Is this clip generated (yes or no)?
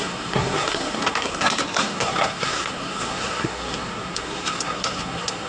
yes